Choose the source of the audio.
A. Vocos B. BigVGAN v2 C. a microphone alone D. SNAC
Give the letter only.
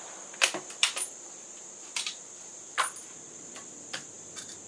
B